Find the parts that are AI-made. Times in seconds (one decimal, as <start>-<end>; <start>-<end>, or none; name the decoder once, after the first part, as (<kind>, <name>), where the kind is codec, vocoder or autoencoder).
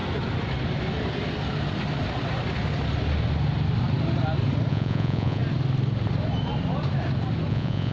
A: 4.7-5.4 (vocoder, Vocos); 7.5-7.9